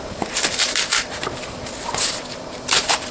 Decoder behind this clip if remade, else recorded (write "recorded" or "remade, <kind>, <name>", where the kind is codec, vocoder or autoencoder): recorded